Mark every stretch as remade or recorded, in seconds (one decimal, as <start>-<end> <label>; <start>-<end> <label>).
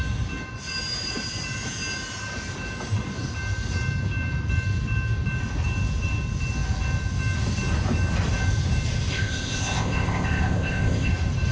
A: 0.0-9.1 recorded; 9.1-11.1 remade; 11.1-11.5 recorded